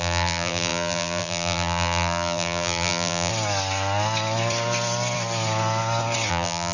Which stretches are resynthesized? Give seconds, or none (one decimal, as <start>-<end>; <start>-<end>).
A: 0.0-3.3; 6.3-6.7